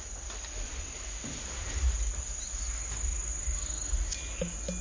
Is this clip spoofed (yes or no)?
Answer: no